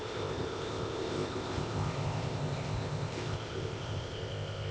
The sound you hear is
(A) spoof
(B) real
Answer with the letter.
A